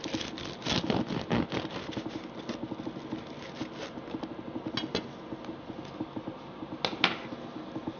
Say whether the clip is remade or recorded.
recorded